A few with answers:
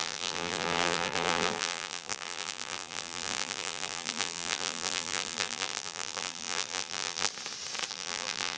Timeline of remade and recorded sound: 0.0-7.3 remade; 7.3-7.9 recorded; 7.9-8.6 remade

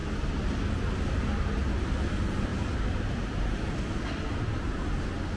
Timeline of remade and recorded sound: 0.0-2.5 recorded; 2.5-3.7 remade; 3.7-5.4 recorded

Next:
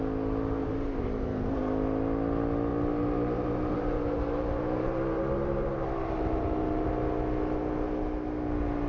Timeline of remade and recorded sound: 0.0-0.6 recorded; 0.6-1.5 remade; 1.5-2.7 recorded; 2.7-6.9 remade; 6.9-8.9 recorded